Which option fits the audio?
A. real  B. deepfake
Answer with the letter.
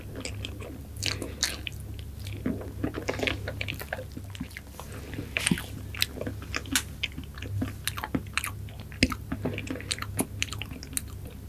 A